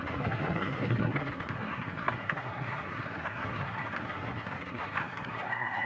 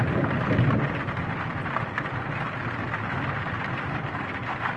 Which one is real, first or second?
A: second